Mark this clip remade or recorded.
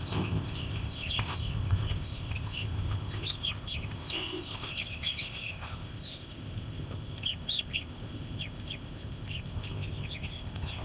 remade